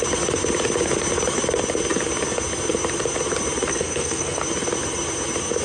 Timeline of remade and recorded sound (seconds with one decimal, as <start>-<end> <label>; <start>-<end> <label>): 0.0-3.7 recorded; 3.7-4.4 remade; 4.4-5.6 recorded